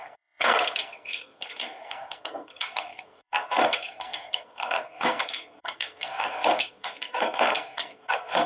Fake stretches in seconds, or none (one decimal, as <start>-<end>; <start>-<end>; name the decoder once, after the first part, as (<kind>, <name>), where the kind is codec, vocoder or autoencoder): 0.0-8.5 (codec, SNAC)

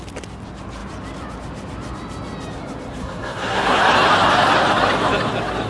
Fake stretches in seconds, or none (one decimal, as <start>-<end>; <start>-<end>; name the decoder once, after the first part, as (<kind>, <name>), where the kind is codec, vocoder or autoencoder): 3.0-3.8 (codec, SNAC)

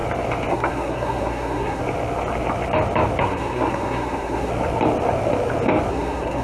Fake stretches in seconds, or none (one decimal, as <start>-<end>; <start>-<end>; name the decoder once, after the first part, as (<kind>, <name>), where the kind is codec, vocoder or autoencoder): 0.5-1.8 (codec, SNAC); 3.2-4.5; 5.9-6.4

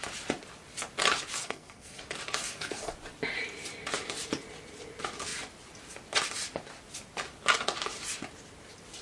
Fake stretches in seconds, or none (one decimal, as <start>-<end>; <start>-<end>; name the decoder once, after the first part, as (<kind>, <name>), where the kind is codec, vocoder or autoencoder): 1.4-2.0 (codec, SNAC); 2.4-2.9

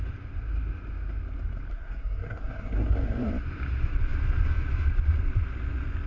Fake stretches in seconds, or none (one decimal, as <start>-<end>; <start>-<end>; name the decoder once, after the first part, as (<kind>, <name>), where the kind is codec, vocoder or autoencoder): 1.7-3.3 (codec, SNAC)

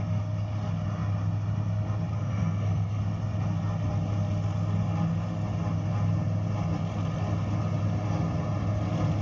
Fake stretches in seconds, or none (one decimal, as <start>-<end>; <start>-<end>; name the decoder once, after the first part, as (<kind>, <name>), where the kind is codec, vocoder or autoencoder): 2.1-3.0 (codec, SNAC)